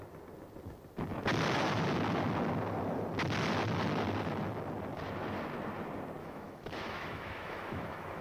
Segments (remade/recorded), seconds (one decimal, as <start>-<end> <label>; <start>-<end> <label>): 0.0-6.2 recorded; 6.2-8.2 remade